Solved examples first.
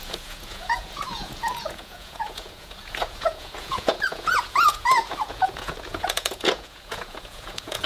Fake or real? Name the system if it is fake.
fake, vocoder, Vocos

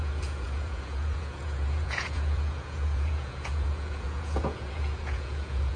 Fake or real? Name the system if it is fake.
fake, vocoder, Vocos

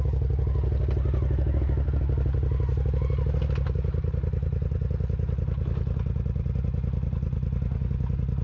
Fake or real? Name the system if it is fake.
real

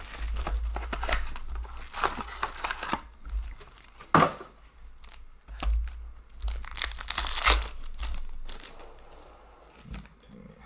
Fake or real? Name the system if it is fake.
real